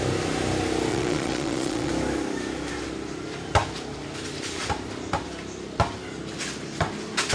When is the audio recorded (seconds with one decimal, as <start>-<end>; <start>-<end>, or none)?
0.0-0.9; 1.9-7.3